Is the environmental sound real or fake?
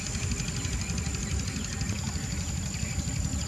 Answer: real